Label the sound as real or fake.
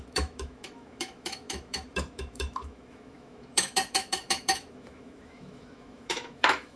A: fake